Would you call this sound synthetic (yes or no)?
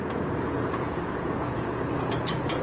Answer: yes